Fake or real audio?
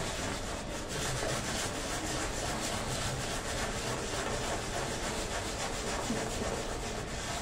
real